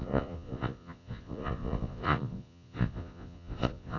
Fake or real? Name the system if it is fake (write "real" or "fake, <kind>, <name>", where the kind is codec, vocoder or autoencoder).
fake, vocoder, Vocos